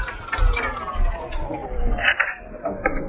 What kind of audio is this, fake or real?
real